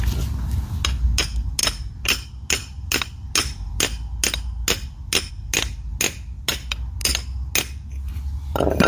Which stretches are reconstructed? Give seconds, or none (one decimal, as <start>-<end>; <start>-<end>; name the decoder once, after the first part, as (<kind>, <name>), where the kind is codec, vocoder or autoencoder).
none